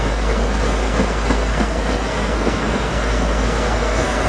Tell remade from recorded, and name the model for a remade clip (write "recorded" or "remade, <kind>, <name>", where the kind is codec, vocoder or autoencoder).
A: remade, codec, SNAC